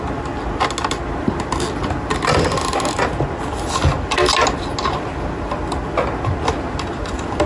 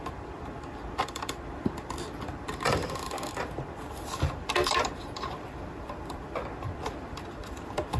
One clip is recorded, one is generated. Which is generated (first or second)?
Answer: second